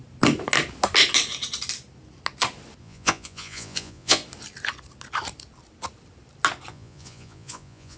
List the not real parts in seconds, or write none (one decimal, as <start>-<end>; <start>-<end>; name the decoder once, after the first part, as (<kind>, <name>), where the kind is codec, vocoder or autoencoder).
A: 2.8-4.2 (vocoder, Vocos); 6.7-8.0

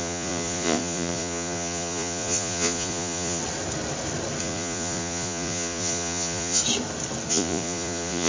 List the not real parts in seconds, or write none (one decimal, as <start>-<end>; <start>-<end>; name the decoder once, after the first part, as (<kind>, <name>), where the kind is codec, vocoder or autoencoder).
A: 0.0-3.4 (vocoder, Vocos); 4.4-6.6; 7.3-8.3

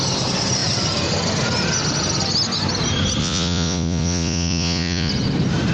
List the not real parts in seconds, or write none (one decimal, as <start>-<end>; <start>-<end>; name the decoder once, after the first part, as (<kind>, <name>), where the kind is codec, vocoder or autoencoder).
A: 3.2-5.1 (vocoder, Vocos)

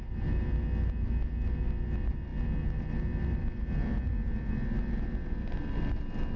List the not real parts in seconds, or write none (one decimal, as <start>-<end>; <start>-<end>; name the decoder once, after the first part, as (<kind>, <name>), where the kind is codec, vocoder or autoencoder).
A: none

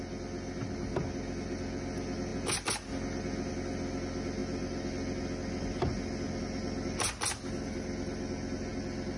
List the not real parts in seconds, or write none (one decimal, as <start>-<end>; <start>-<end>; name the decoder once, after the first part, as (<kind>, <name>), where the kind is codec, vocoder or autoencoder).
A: none

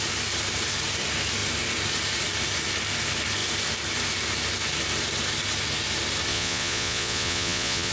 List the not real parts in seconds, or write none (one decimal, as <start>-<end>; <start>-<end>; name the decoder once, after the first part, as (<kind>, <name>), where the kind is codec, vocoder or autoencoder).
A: 6.3-7.9 (vocoder, Vocos)